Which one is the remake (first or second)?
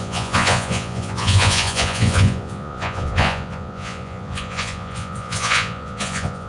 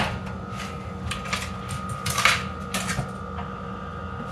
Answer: first